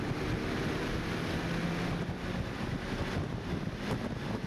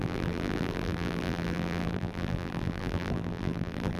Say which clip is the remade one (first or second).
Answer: second